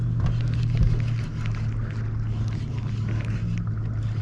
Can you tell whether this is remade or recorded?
recorded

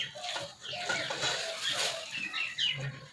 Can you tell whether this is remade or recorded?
recorded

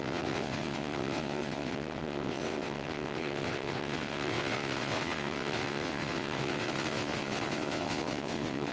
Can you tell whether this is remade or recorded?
remade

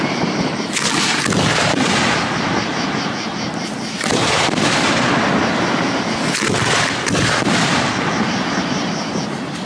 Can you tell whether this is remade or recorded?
recorded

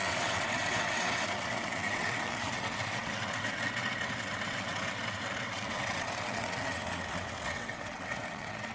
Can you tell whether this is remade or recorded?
remade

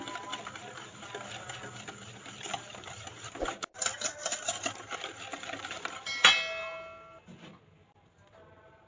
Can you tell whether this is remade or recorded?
recorded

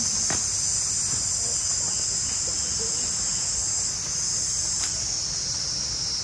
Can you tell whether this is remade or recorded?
recorded